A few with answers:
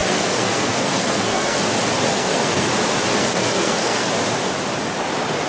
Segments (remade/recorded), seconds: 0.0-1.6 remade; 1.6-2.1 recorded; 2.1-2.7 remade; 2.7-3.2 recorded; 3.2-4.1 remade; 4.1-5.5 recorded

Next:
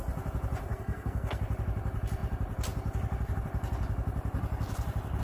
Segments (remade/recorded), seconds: 0.0-0.7 recorded; 0.7-1.4 remade; 1.4-5.2 recorded

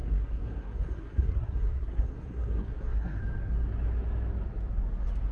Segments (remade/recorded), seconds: 0.0-3.2 remade; 3.2-5.3 recorded

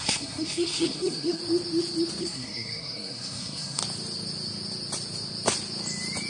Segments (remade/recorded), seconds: 0.0-1.4 remade; 1.4-2.2 recorded; 2.2-3.8 remade; 3.8-6.3 recorded

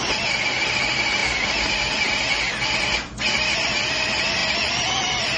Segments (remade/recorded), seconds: 0.0-5.4 recorded

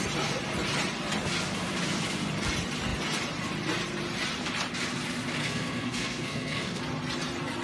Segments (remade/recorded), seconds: 0.0-5.4 recorded; 5.4-6.8 remade; 6.8-7.6 recorded

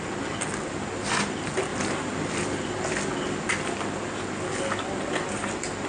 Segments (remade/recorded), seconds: 0.0-5.9 recorded

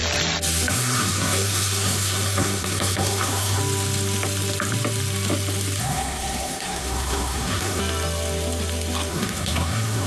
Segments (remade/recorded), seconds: 0.0-0.7 recorded; 0.7-3.6 remade; 3.6-5.8 recorded; 5.8-7.8 remade; 7.8-9.1 recorded; 9.1-10.1 remade